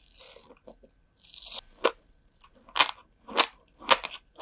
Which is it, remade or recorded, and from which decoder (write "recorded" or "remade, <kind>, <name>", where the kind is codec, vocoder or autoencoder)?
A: recorded